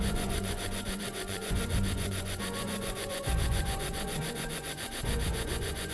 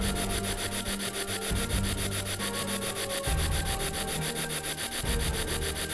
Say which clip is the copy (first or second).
first